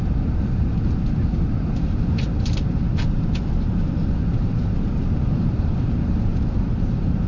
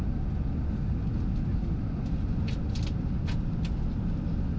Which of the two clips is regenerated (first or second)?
first